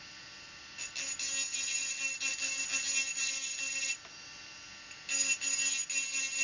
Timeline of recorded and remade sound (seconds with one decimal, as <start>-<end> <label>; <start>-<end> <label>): 0.0-6.4 recorded